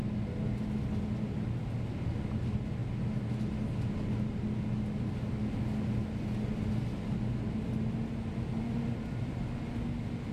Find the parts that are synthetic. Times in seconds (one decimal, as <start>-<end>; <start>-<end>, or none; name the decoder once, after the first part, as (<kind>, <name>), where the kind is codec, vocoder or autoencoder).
none